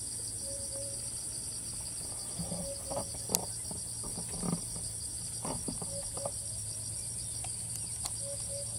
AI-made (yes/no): no